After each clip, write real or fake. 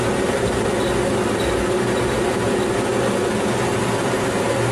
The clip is real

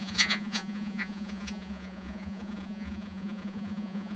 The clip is fake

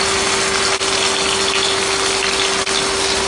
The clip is real